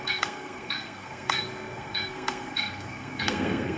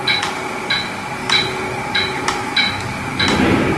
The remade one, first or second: first